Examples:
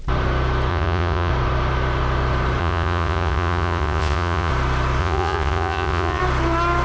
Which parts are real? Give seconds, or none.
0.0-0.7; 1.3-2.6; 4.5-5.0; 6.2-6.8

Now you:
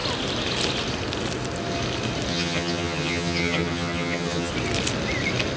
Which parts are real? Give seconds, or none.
0.0-2.3; 4.5-5.6

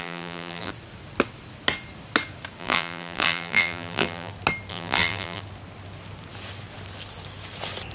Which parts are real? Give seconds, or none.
0.7-2.6; 4.3-4.7; 5.4-7.9

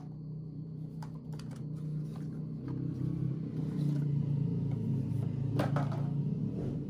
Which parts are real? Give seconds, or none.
0.0-6.9